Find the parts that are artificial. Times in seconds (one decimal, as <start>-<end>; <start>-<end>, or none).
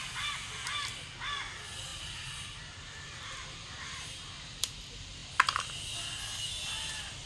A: 1.9-4.8